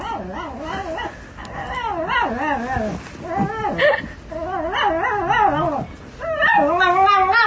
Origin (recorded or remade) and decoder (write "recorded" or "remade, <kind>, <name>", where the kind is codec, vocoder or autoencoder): recorded